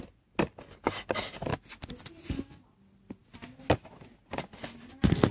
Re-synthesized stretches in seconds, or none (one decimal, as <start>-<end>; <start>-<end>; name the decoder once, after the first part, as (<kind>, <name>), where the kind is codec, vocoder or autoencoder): none